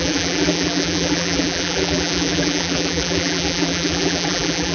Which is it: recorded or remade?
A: remade